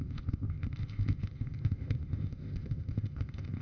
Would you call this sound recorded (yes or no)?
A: no